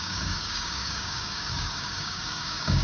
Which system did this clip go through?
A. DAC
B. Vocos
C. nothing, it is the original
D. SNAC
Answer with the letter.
A